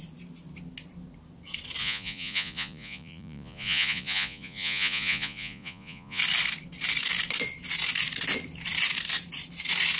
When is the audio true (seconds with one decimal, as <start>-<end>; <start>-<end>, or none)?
0.0-1.8; 6.2-10.0